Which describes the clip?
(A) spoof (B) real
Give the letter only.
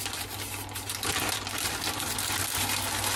B